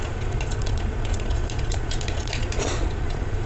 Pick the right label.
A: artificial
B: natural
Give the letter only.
A